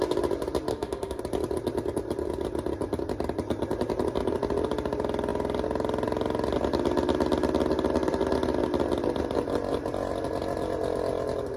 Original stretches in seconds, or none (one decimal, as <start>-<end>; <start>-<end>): 0.0-0.7; 1.2-11.6